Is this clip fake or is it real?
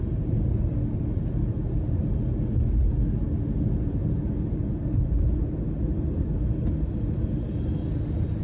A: real